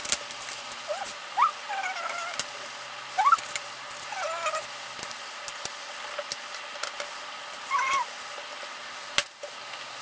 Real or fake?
real